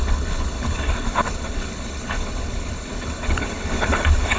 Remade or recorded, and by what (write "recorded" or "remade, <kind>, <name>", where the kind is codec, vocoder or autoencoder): remade, codec, HILCodec